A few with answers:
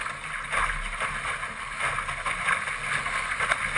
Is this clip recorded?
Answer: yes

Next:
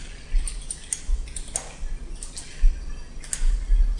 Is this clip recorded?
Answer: yes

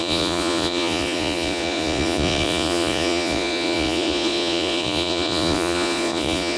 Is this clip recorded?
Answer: no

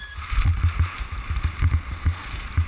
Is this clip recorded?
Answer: yes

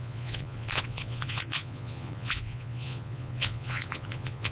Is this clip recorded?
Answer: no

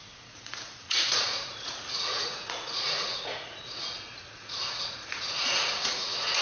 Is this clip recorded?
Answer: no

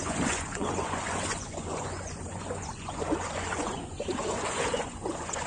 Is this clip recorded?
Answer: no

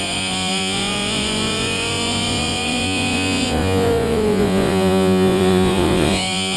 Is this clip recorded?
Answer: no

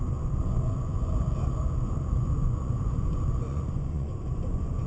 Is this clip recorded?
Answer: no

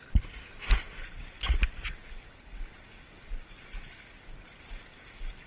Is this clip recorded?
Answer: yes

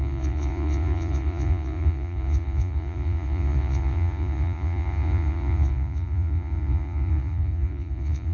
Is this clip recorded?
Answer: no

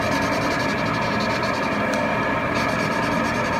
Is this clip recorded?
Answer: yes